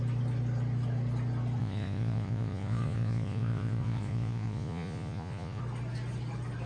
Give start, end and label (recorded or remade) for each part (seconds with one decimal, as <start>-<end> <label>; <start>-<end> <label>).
0.0-1.6 recorded; 1.6-5.6 remade; 5.6-6.7 recorded